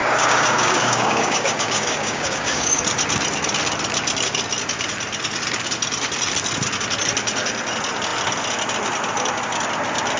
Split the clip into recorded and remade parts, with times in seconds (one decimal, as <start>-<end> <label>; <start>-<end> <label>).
0.0-2.8 remade; 2.8-10.2 recorded